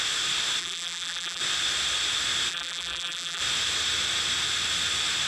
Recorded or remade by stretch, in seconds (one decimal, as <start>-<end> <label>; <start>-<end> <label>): 0.0-0.6 recorded; 0.6-1.4 remade; 1.4-2.5 recorded; 2.5-3.4 remade; 3.4-5.3 recorded